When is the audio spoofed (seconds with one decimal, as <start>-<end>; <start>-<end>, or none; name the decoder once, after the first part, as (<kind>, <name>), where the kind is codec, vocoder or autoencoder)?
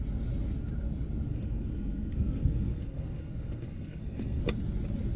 1.3-4.4 (codec, SNAC)